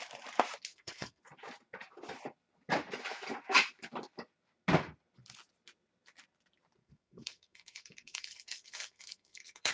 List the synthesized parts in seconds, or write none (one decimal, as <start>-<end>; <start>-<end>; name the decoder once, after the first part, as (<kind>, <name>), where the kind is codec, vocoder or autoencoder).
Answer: 0.7-1.2 (codec, SNAC); 6.8-9.7